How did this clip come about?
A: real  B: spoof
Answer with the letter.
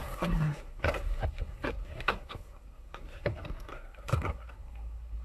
B